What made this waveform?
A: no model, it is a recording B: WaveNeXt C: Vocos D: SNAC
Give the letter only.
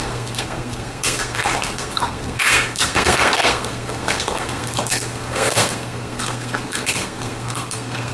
D